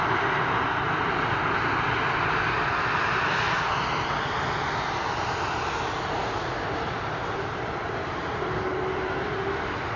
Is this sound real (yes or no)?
yes